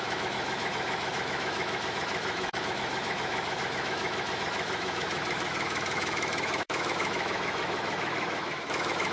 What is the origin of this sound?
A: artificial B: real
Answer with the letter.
A